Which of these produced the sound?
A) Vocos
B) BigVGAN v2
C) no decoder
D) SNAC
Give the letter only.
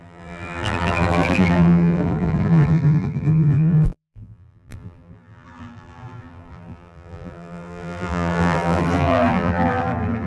B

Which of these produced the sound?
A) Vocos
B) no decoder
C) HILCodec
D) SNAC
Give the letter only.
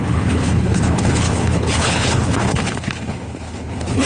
C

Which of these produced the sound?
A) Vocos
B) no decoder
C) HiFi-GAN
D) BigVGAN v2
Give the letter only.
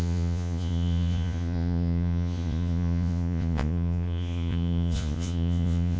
A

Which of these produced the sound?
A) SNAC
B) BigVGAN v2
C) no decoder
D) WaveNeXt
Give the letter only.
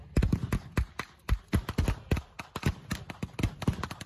C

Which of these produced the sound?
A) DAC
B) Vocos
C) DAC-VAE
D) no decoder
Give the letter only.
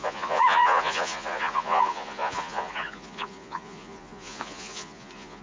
B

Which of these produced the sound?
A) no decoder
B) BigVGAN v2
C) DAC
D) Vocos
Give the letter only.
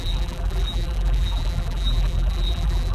B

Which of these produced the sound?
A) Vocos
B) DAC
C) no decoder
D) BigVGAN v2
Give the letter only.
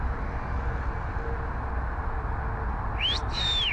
C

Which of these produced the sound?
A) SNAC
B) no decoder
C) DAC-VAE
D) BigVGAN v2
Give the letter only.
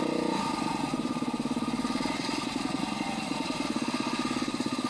B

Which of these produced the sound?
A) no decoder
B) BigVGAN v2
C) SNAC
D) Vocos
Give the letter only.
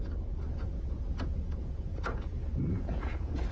D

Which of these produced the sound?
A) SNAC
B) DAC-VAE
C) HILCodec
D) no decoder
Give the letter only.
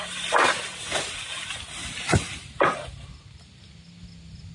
D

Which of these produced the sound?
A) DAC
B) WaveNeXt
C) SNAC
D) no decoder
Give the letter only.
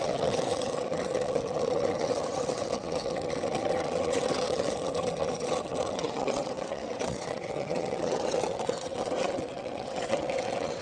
B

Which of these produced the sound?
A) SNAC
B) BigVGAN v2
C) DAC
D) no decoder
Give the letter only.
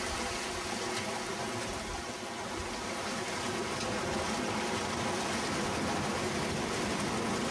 D